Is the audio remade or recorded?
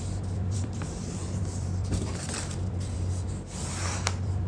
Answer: remade